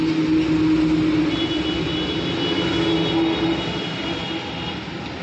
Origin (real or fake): real